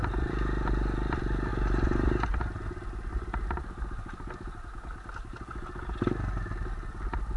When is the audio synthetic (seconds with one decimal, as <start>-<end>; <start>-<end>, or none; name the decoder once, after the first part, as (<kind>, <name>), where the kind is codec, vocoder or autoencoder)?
none